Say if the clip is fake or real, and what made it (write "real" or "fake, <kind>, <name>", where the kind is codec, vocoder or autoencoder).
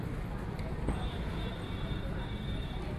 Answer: real